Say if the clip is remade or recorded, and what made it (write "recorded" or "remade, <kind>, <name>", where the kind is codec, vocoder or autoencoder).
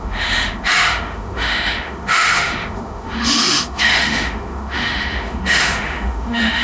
remade, autoencoder, DAC-VAE